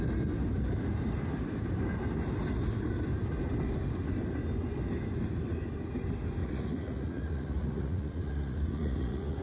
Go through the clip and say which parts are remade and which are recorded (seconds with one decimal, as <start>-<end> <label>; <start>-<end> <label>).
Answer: 0.0-6.4 recorded; 6.4-9.4 remade